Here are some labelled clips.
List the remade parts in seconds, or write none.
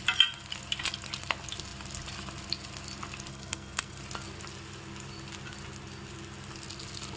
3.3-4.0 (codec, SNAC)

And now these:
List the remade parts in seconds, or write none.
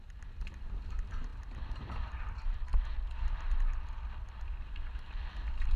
none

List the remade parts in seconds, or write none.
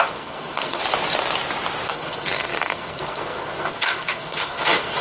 0.0-0.8 (codec, SNAC); 1.9-5.0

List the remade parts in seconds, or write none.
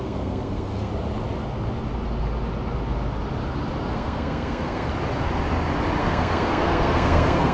0.0-0.9 (codec, SNAC); 3.9-4.9; 6.0-7.5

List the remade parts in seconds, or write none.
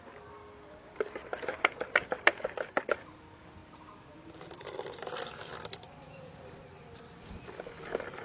none